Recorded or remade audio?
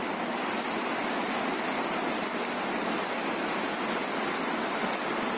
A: recorded